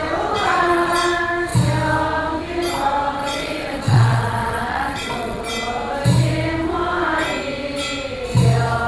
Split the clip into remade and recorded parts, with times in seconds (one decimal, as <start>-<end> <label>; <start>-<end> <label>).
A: 0.0-0.4 recorded; 0.4-0.9 remade; 0.9-3.2 recorded; 3.2-5.4 remade; 5.4-8.9 recorded